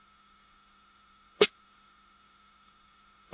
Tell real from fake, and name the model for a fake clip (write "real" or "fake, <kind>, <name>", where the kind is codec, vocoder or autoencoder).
fake, autoencoder, DAC-VAE